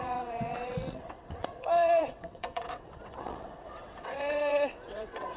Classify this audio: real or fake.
fake